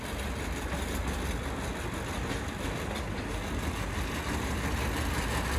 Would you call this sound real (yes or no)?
yes